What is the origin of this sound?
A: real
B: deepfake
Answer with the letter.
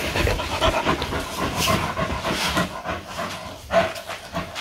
A